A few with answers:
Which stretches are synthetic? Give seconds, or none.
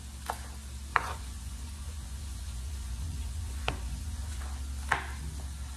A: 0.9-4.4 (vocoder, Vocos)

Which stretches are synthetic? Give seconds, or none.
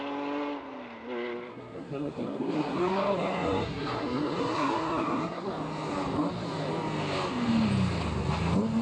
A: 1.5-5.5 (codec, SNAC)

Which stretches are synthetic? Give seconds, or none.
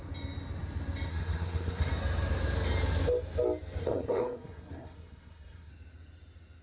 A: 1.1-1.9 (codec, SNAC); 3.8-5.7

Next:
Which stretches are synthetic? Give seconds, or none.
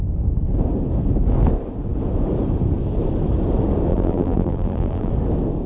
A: 3.9-5.1 (vocoder, BigVGAN v2)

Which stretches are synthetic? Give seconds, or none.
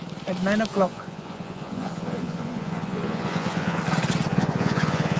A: 0.7-3.8 (vocoder, Vocos); 4.3-5.2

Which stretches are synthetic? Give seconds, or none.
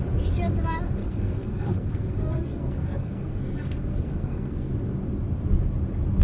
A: 1.0-4.7 (codec, SNAC)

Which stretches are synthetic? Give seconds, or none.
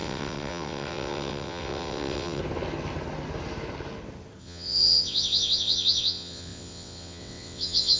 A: 0.0-2.4 (vocoder, WaveNeXt); 4.4-8.0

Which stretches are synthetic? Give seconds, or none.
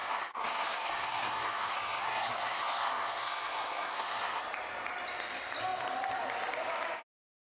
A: 0.0-4.4 (codec, SNAC)